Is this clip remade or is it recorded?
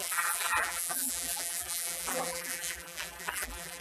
remade